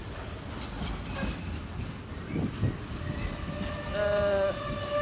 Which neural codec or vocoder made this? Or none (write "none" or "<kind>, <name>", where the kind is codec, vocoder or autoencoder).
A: none